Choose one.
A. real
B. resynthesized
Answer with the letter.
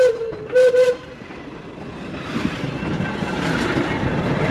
B